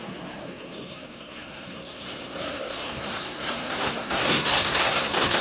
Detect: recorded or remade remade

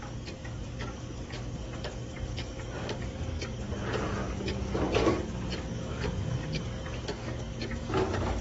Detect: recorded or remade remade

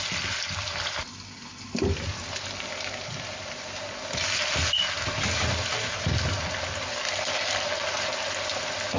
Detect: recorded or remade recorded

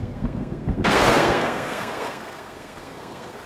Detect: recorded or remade remade